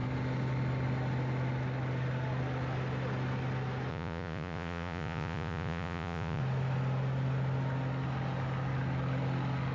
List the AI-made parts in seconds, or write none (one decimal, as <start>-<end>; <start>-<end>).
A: 3.9-6.4